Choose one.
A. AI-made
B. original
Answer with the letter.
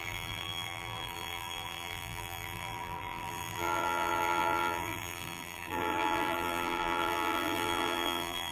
A